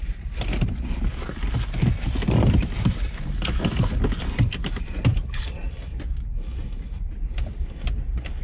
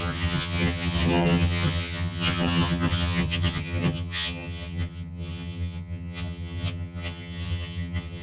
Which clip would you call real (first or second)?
first